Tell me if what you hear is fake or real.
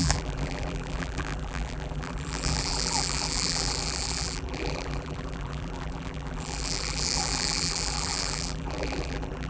fake